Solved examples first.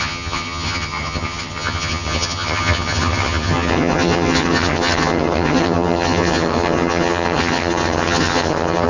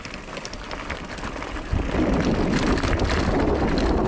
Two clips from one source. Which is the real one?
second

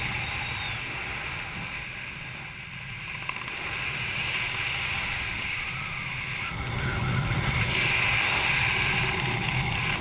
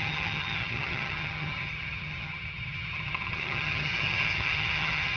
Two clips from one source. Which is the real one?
first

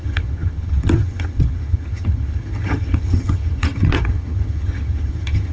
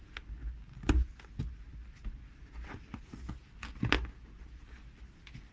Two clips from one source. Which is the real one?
second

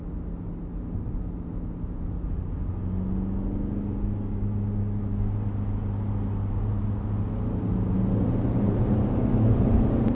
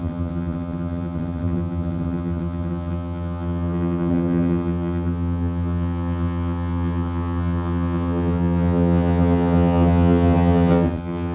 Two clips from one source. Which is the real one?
first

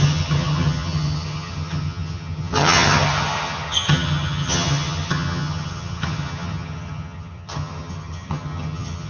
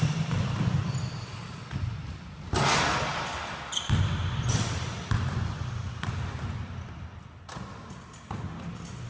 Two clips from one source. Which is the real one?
second